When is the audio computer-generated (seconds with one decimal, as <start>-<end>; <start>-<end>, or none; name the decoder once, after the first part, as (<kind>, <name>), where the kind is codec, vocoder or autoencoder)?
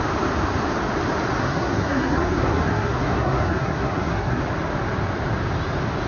1.4-4.4 (codec, SNAC)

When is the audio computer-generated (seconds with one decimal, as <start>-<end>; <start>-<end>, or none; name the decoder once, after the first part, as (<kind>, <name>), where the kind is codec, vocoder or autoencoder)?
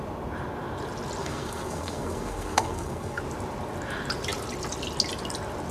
1.2-3.2 (codec, SNAC)